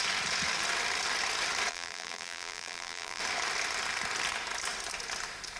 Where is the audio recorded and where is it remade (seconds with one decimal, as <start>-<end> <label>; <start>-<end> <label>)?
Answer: 0.0-1.7 recorded; 1.7-3.2 remade; 3.2-5.6 recorded